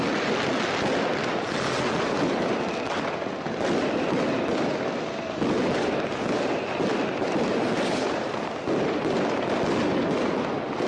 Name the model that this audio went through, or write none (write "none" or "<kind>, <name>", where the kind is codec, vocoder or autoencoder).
none